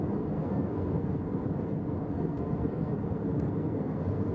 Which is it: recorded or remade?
remade